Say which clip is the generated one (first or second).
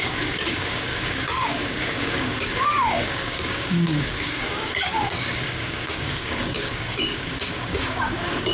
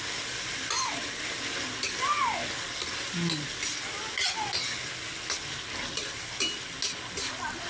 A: first